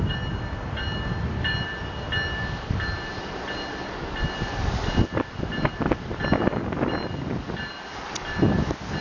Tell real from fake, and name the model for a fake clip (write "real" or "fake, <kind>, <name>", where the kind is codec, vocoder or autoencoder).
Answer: real